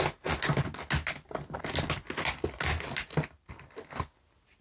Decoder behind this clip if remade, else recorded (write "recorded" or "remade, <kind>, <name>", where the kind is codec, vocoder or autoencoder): recorded